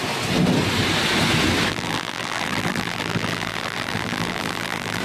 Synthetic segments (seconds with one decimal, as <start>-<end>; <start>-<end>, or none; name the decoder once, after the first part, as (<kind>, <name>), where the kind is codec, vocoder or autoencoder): 1.7-5.0 (vocoder, BigVGAN v2)